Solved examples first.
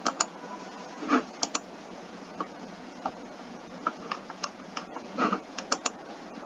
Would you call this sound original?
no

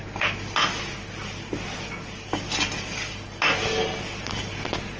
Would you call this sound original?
yes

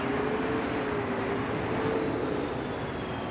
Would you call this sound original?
yes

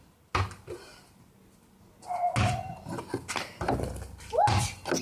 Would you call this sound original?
yes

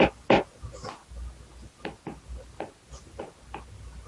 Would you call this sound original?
yes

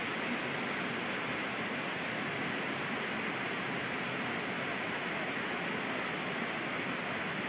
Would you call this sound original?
yes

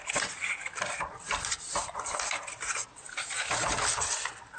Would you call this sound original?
yes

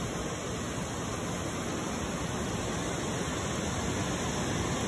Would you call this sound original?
yes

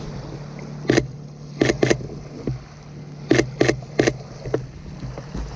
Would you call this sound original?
yes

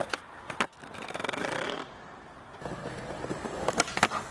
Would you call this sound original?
yes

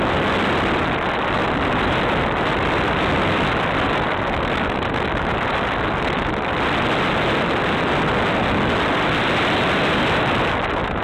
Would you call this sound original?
yes